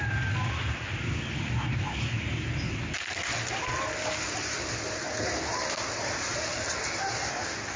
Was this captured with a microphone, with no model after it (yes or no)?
yes